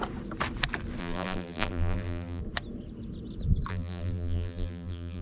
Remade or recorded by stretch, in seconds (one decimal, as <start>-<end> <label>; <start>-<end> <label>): 0.0-1.0 recorded; 1.0-2.4 remade; 2.4-3.7 recorded; 3.7-5.2 remade